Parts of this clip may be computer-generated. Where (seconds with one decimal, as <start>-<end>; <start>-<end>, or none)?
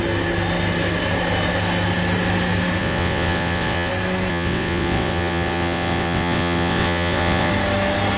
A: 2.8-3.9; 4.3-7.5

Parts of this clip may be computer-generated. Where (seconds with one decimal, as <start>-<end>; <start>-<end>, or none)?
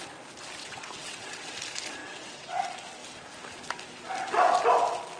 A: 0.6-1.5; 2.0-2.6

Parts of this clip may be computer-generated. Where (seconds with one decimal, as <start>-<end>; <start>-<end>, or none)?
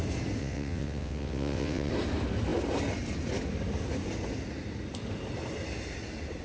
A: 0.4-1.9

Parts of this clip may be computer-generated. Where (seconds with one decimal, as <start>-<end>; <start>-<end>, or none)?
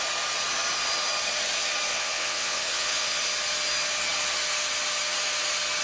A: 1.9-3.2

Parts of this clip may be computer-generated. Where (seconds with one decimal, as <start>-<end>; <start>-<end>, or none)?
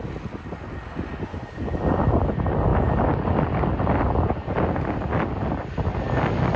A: none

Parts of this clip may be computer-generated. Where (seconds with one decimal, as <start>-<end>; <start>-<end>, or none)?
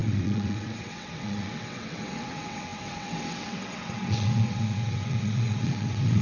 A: 0.0-6.2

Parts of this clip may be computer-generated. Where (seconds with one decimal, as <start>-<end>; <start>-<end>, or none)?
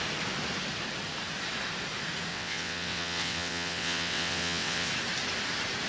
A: 2.3-4.9